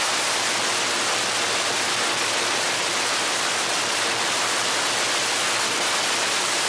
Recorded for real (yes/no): yes